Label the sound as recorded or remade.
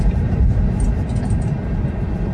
remade